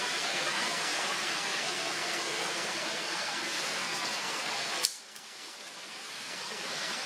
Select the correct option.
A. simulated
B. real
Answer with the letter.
A